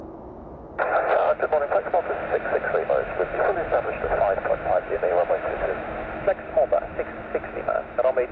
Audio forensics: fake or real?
real